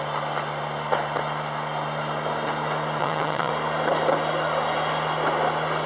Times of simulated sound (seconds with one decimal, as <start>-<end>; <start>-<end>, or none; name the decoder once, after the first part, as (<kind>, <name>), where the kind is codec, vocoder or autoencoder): 3.0-3.5 (vocoder, WaveNeXt)